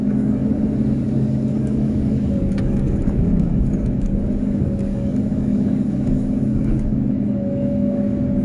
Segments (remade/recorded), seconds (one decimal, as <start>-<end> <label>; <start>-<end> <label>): 0.0-0.4 remade; 0.4-1.0 recorded; 1.0-8.4 remade